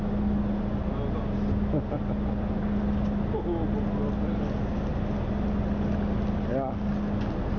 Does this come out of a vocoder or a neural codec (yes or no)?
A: no